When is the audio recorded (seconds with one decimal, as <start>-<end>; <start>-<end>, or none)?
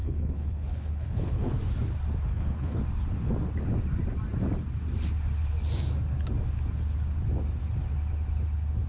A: 1.6-2.3; 2.8-8.9